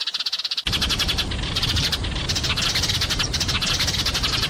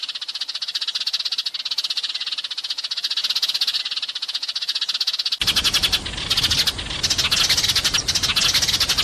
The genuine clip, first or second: second